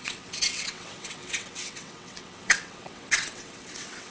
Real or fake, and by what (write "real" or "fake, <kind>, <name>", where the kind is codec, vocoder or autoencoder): fake, vocoder, WaveNeXt